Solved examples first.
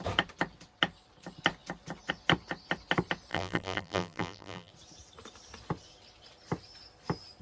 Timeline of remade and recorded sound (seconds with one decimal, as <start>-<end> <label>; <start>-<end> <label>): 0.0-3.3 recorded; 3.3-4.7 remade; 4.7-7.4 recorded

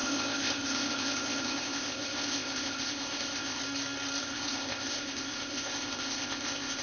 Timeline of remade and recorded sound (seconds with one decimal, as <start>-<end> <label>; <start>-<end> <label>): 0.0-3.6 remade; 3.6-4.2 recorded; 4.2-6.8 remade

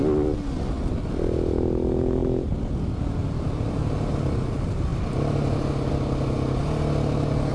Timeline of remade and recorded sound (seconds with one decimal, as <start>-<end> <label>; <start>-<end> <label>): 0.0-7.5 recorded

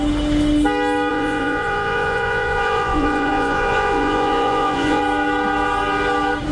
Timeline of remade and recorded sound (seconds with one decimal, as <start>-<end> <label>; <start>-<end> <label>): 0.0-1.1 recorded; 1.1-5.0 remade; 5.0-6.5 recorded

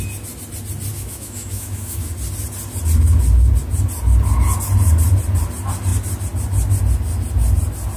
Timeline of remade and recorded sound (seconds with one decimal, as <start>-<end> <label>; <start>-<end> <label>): 0.0-0.9 recorded; 0.9-2.1 remade; 2.1-8.0 recorded

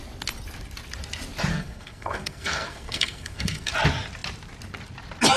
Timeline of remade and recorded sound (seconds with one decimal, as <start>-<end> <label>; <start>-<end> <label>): 0.0-1.5 recorded; 1.5-3.7 remade; 3.7-5.4 recorded

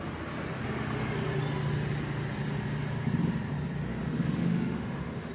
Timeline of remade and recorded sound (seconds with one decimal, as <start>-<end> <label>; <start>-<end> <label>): 0.0-3.9 recorded; 3.9-5.3 remade

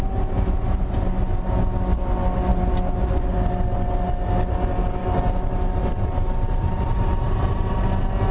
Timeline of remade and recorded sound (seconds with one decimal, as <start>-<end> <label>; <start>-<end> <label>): 0.0-5.0 recorded; 5.0-7.7 remade; 7.7-8.3 recorded